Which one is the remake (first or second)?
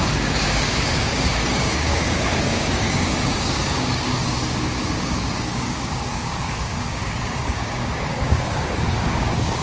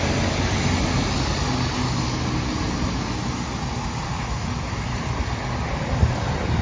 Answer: first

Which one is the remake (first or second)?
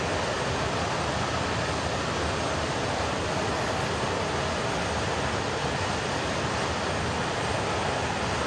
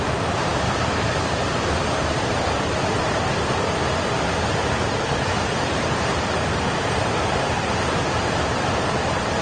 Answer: second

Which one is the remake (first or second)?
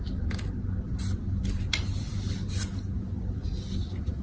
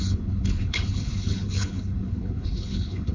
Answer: second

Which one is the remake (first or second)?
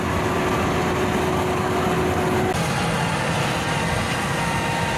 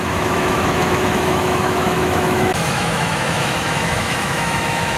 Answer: second